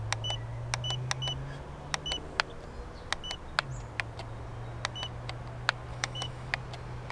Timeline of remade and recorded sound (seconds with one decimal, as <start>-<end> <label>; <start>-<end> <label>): 0.0-5.9 recorded; 5.9-6.5 remade; 6.5-7.1 recorded